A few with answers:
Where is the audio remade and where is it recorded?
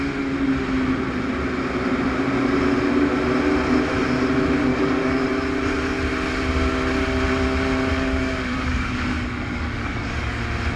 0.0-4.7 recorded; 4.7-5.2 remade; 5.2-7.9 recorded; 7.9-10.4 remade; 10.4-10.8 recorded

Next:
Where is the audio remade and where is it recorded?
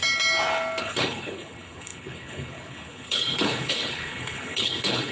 0.0-0.8 recorded; 0.8-5.1 remade